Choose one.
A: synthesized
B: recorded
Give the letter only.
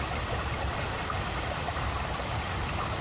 A